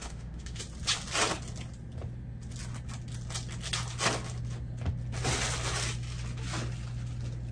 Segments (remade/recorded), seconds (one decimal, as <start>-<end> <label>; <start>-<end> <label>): 0.0-0.6 remade; 0.6-7.5 recorded